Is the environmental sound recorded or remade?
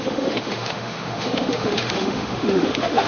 remade